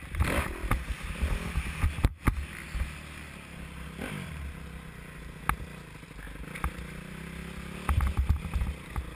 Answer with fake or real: real